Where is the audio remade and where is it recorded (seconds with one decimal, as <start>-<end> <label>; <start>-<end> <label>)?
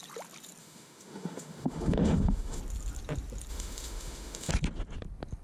0.0-0.6 recorded; 0.6-2.6 remade; 2.6-3.5 recorded; 3.5-4.5 remade; 4.5-5.4 recorded